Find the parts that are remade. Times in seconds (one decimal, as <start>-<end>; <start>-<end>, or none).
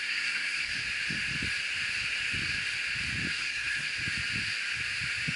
0.0-0.7; 3.3-3.9